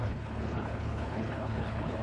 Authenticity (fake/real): fake